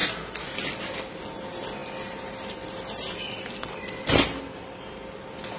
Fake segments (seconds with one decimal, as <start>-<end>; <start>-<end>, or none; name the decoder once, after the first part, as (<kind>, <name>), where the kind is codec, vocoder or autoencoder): 0.0-0.8 (vocoder, BigVGAN v2); 1.8-5.6